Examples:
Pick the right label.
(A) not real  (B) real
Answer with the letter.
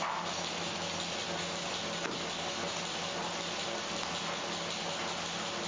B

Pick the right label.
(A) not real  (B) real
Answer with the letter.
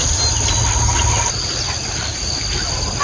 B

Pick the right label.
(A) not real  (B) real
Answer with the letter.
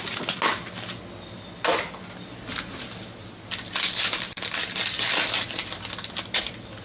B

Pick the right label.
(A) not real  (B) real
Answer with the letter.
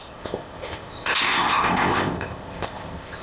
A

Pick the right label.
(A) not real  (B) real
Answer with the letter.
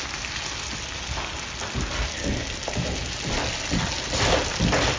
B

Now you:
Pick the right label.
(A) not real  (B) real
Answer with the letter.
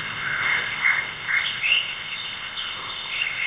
A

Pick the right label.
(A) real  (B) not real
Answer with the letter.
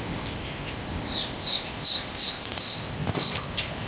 B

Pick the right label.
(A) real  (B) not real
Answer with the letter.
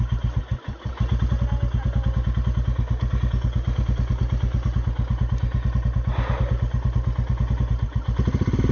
A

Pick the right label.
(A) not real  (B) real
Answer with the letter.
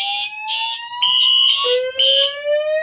B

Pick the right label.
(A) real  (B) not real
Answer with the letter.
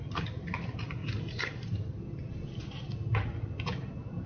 A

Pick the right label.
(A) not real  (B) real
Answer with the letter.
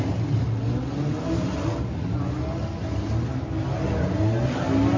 B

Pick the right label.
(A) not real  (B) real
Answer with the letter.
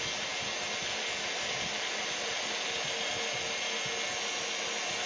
B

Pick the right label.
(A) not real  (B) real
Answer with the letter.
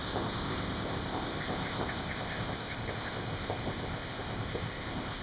A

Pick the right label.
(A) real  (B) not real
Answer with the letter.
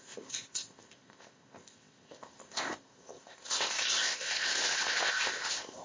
B